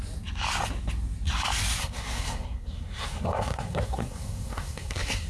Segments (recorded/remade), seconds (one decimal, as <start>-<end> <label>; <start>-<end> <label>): 0.0-1.8 recorded; 1.8-5.3 remade

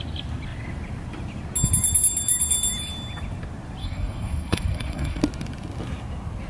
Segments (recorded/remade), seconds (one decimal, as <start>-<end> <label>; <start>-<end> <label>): 0.0-3.8 recorded; 3.8-5.2 remade; 5.2-6.5 recorded